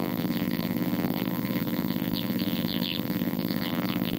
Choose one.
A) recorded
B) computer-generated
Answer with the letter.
B